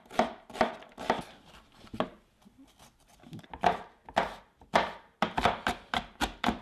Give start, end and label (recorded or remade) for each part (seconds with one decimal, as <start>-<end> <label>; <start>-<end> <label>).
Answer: 0.0-6.6 recorded